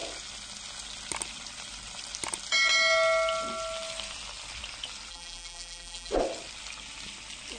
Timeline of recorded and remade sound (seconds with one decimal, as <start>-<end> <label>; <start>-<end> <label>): 0.0-5.1 recorded; 5.1-6.1 remade; 6.1-7.6 recorded